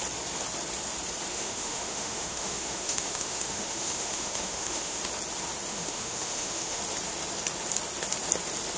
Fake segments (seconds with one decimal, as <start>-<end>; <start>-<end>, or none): 1.3-5.0; 5.7-6.8